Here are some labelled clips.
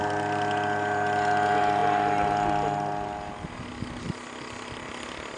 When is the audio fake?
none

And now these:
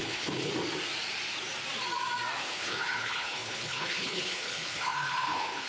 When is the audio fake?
0.0-0.5 (codec, HILCodec); 2.4-5.7

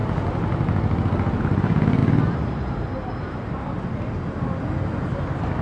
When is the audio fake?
none

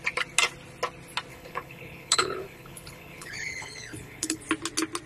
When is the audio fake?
1.3-4.4 (codec, HILCodec)

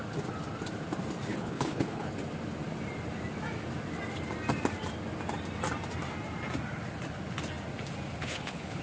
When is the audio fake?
1.3-2.1 (codec, HILCodec); 8.2-8.8